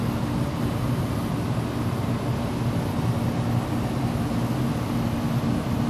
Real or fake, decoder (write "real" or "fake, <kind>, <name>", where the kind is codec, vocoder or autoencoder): real